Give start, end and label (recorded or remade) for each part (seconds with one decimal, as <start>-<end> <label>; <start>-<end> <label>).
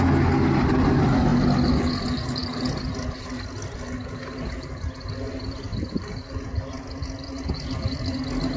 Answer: 0.0-8.6 recorded